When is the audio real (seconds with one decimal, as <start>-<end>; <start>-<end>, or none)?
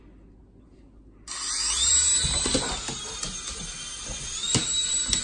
0.0-5.2